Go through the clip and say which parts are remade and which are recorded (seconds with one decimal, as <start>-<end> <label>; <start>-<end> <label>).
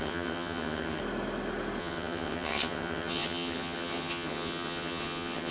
0.0-1.0 remade; 1.0-1.8 recorded; 1.8-5.5 remade